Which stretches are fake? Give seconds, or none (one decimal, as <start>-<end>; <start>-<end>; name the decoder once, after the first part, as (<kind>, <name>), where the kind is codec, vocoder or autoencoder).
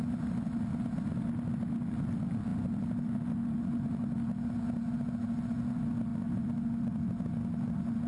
none